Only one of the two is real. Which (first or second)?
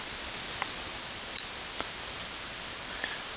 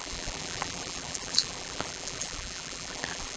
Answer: first